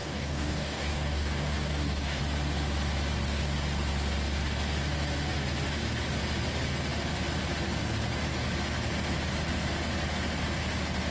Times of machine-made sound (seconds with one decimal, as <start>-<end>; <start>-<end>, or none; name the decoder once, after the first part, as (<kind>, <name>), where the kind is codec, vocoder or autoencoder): 0.0-2.2 (codec, DAC)